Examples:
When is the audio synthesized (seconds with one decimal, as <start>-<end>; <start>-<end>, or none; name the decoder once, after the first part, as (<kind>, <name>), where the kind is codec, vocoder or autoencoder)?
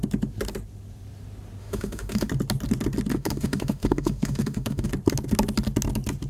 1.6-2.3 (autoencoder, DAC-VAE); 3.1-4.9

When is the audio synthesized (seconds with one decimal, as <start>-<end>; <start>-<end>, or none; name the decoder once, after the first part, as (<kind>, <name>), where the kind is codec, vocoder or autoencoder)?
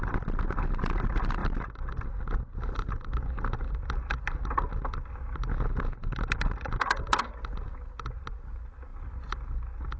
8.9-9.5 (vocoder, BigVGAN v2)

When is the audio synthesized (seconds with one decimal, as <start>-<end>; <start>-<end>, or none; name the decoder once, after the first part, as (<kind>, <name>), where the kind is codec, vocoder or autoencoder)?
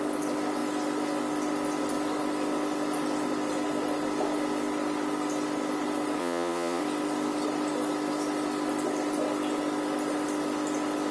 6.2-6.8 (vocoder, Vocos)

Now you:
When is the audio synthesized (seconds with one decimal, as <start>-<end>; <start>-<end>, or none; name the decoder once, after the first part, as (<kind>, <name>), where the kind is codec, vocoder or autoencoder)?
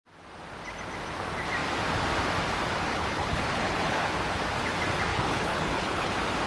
2.9-4.1 (codec, HILCodec); 5.1-6.1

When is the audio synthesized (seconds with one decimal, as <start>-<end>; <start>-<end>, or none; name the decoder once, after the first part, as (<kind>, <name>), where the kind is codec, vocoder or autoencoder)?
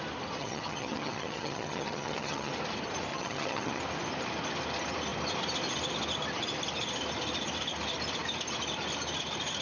0.4-2.5 (vocoder, HiFi-GAN); 3.1-3.8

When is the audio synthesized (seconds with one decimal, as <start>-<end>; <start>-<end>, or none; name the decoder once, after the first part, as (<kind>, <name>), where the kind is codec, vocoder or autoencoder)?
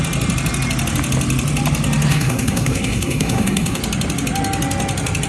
2.1-3.8 (codec, SNAC)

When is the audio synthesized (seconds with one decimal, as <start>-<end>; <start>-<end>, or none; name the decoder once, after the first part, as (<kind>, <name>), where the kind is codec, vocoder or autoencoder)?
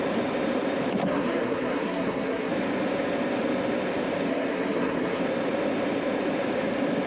1.0-2.5 (codec, SNAC); 4.3-5.2